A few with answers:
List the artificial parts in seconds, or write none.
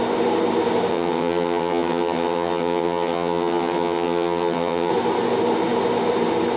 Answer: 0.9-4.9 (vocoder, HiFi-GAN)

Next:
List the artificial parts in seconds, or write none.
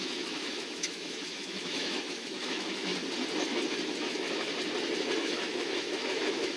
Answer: 0.0-2.9 (autoencoder, DAC-VAE); 4.0-4.5; 5.2-6.6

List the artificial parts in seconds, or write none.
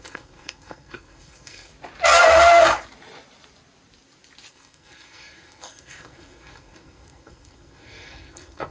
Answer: 0.0-1.7 (codec, SNAC); 4.5-8.7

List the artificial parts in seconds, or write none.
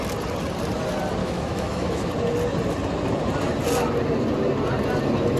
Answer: 1.2-2.1 (autoencoder, DAC-VAE)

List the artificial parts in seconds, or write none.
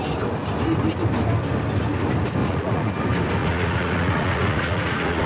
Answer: 2.4-2.9 (vocoder, Vocos); 3.4-5.3